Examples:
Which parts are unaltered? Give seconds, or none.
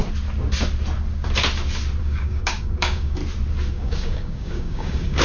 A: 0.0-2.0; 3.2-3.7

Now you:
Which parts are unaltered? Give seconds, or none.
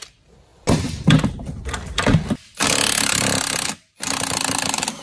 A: 0.0-5.0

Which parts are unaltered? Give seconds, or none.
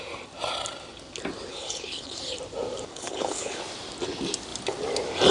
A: 0.0-1.5; 2.2-2.9; 3.6-5.3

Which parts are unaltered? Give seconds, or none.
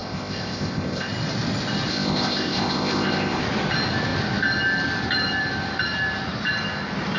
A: 1.1-1.9; 3.4-7.2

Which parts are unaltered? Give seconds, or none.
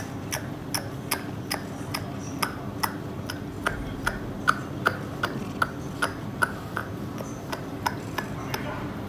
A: 0.0-6.8; 8.0-9.1